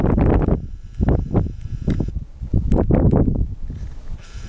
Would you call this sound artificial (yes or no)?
no